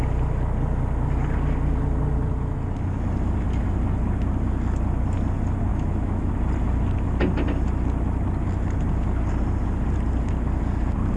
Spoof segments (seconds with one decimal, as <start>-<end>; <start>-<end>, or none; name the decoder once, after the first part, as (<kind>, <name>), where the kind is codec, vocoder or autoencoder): 5.7-6.3 (autoencoder, DAC-VAE)